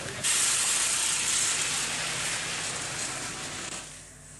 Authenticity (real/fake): real